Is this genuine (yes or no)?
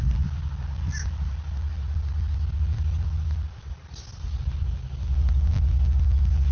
yes